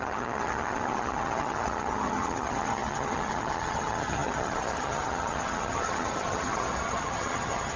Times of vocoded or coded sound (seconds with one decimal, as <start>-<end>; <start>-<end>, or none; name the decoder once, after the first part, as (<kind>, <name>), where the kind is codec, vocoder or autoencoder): 0.0-7.8 (vocoder, HiFi-GAN)